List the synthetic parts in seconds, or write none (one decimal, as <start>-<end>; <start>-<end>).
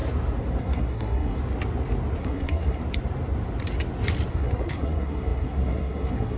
0.6-1.4; 2.2-2.8; 4.3-6.4